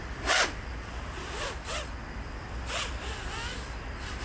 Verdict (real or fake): real